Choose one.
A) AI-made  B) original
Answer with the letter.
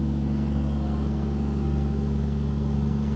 A